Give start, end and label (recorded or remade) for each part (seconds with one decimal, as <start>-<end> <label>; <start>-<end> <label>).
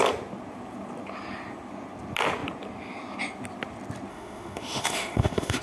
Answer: 0.0-4.1 recorded; 4.1-5.6 remade